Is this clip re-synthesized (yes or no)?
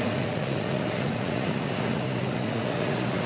yes